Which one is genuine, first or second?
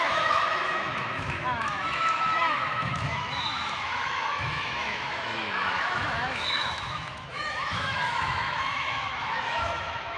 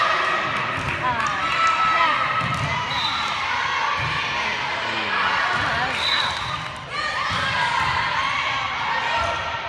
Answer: second